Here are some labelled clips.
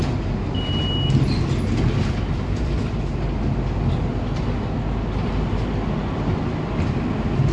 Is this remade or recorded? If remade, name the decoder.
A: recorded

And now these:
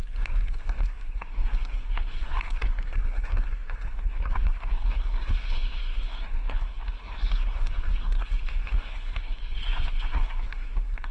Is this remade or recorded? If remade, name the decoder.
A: remade, codec, SNAC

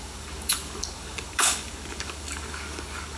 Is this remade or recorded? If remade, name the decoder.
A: remade, codec, DAC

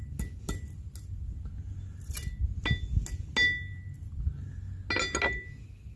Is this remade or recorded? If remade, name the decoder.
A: recorded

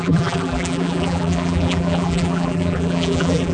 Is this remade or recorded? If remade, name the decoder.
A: remade, vocoder, BigVGAN v2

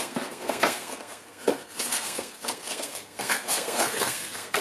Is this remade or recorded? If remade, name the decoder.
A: remade, codec, SNAC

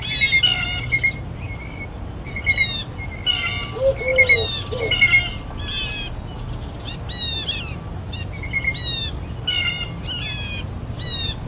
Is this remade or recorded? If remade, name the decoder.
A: recorded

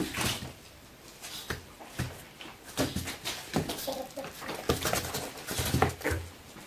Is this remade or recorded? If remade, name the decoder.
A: recorded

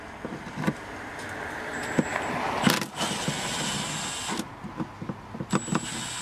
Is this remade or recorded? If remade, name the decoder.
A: recorded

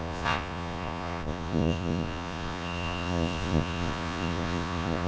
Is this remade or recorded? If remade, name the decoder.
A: remade, vocoder, Vocos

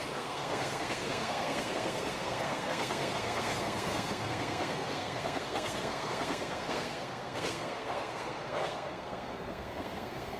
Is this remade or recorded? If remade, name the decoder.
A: remade, codec, SNAC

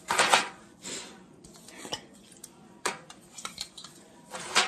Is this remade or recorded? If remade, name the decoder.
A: remade, vocoder, Vocos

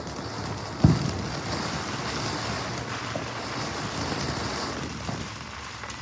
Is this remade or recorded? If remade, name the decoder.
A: recorded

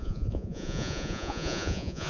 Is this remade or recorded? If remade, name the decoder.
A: remade, vocoder, Vocos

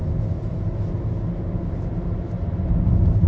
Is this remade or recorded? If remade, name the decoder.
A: recorded